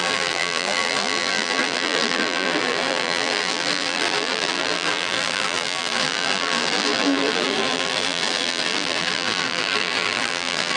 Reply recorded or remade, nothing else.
remade